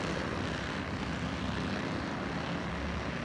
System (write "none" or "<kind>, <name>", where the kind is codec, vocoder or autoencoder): vocoder, BigVGAN v2